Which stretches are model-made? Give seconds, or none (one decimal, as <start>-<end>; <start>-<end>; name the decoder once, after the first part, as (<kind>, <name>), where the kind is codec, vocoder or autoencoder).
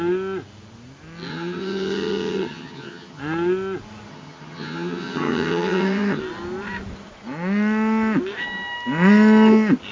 1.3-3.2 (vocoder, HiFi-GAN); 4.1-6.2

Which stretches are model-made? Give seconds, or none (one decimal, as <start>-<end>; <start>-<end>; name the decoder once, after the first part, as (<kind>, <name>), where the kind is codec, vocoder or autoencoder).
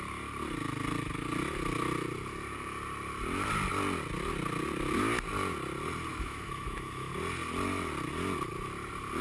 6.1-7.1 (autoencoder, DAC-VAE)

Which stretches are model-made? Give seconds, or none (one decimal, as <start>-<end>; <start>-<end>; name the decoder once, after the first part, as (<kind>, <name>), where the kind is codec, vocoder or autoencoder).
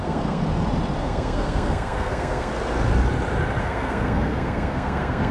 0.0-0.4 (codec, SNAC); 1.0-2.5; 3.6-5.3